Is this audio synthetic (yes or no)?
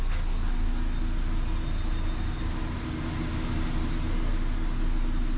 no